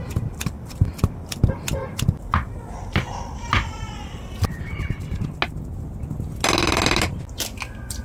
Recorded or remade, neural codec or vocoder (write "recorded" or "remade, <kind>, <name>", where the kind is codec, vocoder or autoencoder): recorded